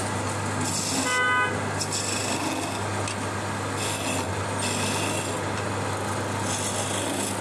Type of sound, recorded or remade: recorded